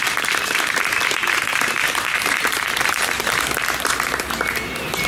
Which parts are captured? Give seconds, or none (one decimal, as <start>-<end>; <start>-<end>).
0.0-1.5; 4.3-5.1

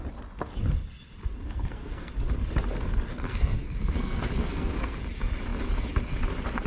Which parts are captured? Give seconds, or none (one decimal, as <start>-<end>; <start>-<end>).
0.0-1.3; 2.1-3.1; 5.0-6.7